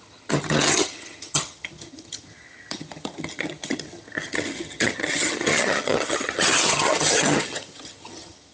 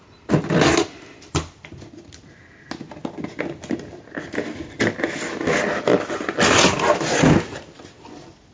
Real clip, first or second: second